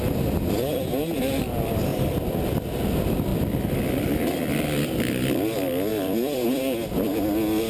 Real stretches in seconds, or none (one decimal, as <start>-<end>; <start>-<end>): 0.0-1.9; 2.5-3.3; 5.1-5.9; 6.6-7.7